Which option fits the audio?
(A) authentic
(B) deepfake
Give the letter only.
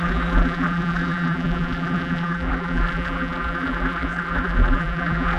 B